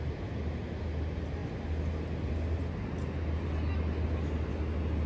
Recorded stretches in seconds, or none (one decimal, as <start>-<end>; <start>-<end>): 0.0-5.1